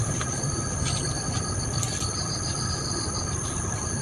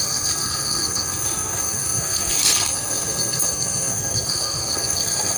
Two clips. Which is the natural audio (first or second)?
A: first